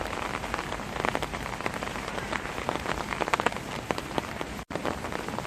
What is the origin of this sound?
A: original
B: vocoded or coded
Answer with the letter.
B